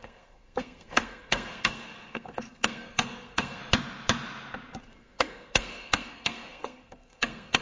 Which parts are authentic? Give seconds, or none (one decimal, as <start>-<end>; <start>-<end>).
3.6-4.8